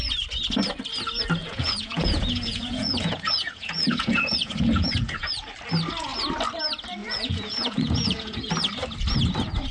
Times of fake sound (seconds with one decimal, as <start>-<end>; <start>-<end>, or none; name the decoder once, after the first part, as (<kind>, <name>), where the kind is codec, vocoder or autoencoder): 1.4-5.5 (vocoder, Vocos); 7.0-8.5